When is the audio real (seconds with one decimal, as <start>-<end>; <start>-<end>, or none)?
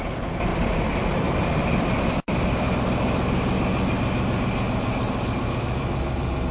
0.0-0.5; 1.1-6.5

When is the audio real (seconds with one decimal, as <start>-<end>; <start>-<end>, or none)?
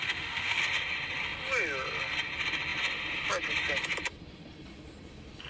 0.6-5.5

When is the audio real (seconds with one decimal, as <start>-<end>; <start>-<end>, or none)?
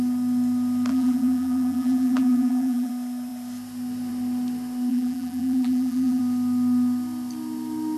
0.0-0.9; 2.9-4.9; 6.2-8.0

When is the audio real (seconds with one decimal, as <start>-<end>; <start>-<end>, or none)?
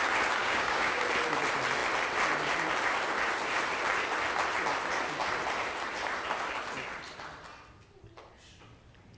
0.0-0.4; 1.0-9.2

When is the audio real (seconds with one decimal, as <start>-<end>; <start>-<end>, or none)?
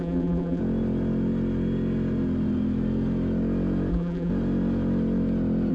0.6-3.9; 4.3-5.7